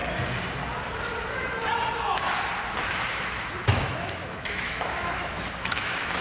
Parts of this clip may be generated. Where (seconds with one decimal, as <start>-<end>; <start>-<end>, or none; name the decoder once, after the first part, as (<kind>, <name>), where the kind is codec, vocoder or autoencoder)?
3.7-6.2 (autoencoder, DAC-VAE)

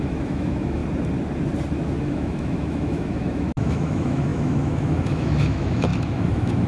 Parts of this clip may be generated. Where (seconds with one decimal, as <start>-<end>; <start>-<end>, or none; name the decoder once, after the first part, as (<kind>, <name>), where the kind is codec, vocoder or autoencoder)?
0.0-0.8 (autoencoder, DAC-VAE); 2.0-6.7

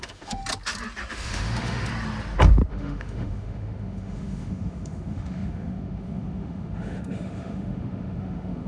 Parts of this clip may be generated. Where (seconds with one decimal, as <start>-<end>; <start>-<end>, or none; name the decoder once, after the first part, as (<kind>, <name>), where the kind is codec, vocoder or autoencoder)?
0.0-0.4 (autoencoder, DAC-VAE); 1.1-1.9; 2.7-8.7

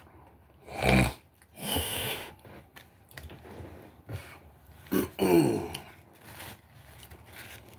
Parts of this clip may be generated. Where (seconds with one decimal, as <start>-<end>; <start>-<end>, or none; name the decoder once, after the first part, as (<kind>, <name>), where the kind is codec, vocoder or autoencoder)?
1.6-2.3 (autoencoder, DAC-VAE)